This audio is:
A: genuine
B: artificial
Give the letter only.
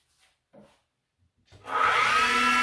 A